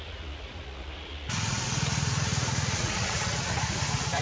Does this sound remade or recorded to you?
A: remade